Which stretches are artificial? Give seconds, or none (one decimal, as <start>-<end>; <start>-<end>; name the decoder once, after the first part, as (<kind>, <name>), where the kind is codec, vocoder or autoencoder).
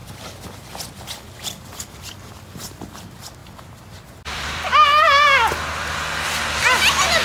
0.0-2.3 (vocoder, BigVGAN v2)